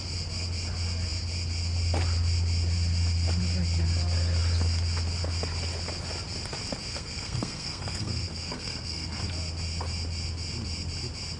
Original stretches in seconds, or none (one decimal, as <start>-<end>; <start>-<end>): 0.0-6.9; 9.2-11.4